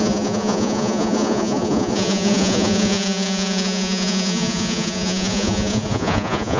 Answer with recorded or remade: remade